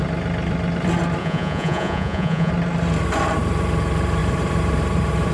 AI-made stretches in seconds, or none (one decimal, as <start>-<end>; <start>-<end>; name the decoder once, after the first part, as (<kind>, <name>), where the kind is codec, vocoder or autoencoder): 1.2-2.5 (vocoder, Vocos)